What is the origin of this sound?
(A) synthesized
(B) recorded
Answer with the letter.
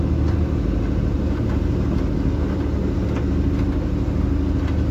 B